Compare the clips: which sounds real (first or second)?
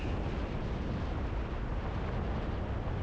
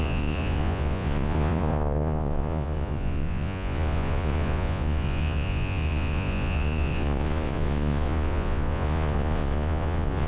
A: first